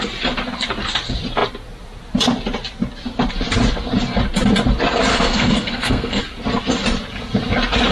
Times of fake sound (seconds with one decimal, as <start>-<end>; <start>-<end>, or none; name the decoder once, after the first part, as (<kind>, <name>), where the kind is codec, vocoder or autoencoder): 5.1-6.2 (codec, SNAC)